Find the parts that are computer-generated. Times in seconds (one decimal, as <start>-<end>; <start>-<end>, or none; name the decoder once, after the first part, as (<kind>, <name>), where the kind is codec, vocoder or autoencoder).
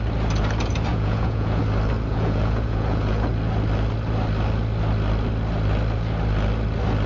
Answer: 0.9-1.6 (vocoder, Vocos); 2.1-3.3